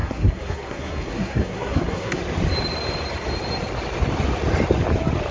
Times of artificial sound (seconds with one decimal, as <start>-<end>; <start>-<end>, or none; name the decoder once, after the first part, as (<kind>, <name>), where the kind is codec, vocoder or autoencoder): 0.0-2.2 (codec, SNAC)